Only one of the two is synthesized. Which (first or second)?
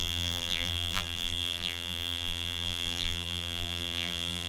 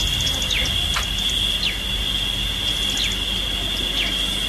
first